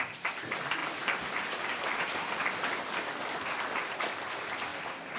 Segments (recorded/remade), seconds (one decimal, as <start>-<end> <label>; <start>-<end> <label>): 0.0-4.7 remade; 4.7-5.2 recorded